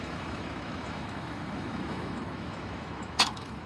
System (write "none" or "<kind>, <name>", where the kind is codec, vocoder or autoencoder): autoencoder, DAC-VAE